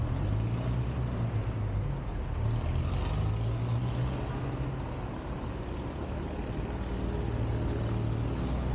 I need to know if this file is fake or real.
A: real